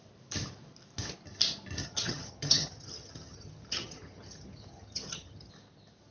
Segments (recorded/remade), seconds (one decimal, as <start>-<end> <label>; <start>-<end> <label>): 0.0-1.8 recorded; 1.8-5.5 remade; 5.5-6.1 recorded